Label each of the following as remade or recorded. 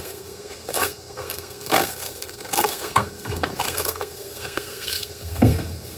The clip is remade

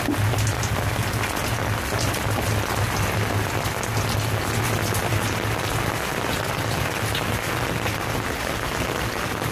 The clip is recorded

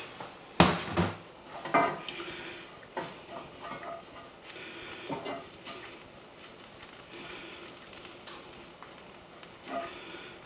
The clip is recorded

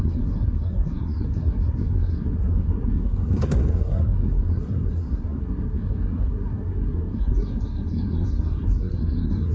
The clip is remade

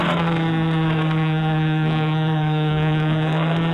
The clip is remade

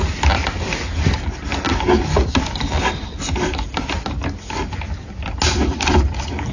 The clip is recorded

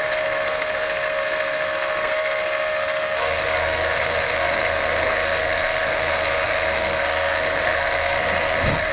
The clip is remade